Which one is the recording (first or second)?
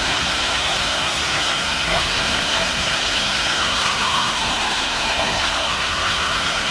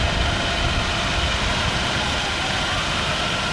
second